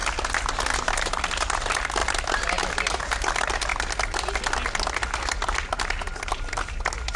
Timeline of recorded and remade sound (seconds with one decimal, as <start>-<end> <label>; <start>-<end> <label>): 0.0-7.2 recorded